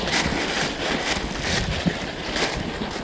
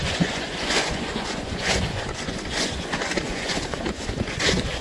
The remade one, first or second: second